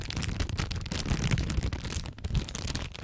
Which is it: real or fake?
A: real